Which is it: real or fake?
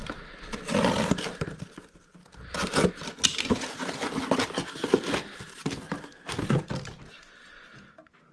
real